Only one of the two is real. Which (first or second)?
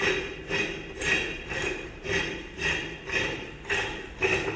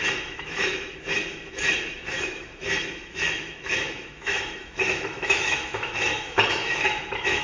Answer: first